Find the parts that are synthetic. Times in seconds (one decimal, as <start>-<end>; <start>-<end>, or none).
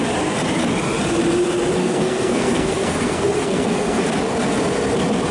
1.8-4.0